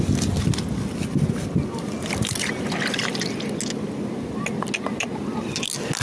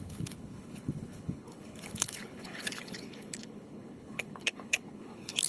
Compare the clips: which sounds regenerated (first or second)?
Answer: second